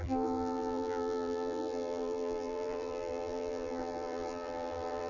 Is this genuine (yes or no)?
no